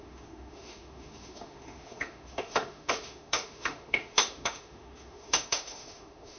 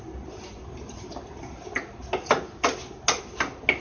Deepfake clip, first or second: first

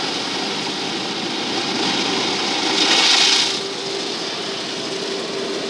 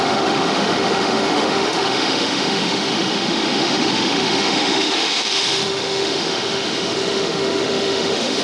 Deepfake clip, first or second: second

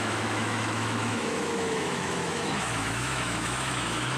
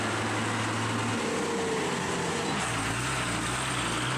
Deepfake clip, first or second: first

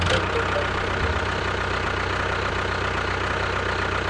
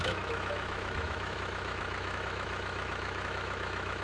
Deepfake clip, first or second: second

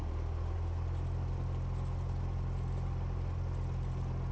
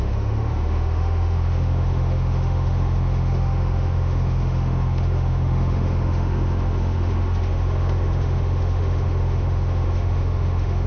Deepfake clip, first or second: second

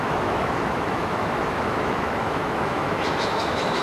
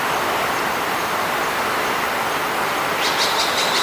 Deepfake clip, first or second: first